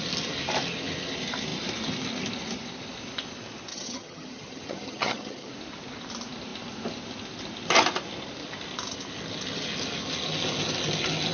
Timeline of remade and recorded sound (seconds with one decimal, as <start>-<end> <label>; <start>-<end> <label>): 0.0-3.7 recorded; 3.7-5.5 remade; 5.5-11.3 recorded